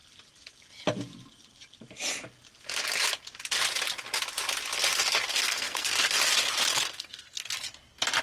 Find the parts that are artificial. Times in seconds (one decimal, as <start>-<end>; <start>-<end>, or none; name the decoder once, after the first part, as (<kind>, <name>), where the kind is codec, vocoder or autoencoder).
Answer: 5.3-6.2 (codec, SNAC); 6.7-7.5